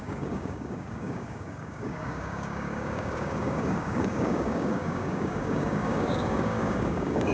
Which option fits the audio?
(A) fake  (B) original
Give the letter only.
A